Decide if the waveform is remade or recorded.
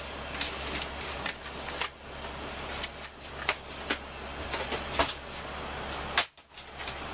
recorded